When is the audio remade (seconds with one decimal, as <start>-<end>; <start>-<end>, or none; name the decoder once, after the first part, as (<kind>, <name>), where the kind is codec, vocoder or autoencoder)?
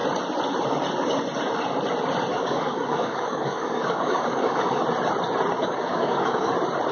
2.3-4.8 (codec, DAC); 5.6-6.5